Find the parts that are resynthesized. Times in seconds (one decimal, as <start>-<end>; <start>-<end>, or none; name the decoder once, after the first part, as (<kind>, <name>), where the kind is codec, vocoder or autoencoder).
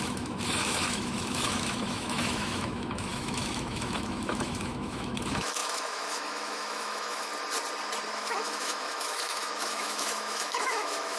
0.0-7.3 (autoencoder, DAC-VAE); 8.1-11.2